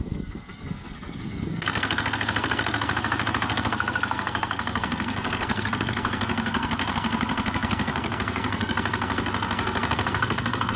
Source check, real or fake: fake